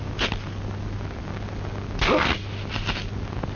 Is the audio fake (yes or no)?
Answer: no